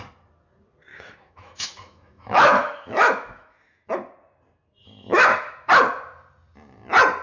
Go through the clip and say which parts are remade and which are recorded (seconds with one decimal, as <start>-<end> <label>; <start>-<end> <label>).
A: 0.0-0.9 recorded; 0.9-3.9 remade; 3.9-4.8 recorded; 4.8-5.7 remade; 5.7-7.2 recorded